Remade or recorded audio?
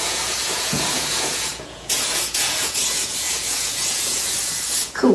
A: remade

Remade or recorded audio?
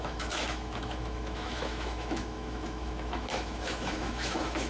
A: remade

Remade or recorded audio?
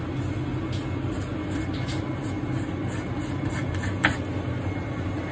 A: recorded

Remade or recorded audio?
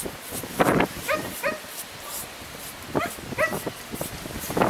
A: recorded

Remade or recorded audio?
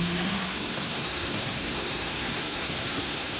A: remade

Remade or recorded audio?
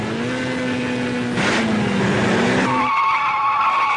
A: recorded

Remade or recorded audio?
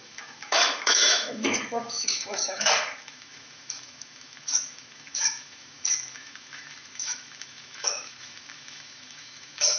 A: remade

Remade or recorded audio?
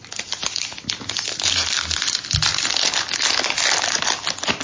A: recorded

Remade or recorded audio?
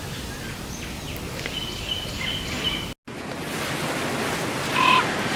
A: recorded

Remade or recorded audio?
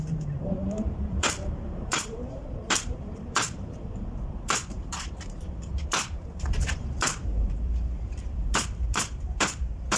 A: remade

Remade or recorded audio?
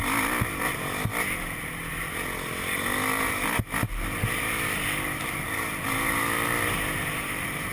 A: recorded